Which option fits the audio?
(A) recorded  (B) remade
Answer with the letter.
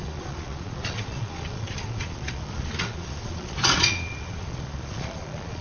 B